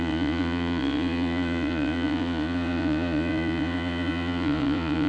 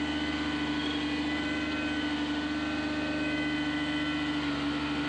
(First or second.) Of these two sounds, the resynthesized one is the first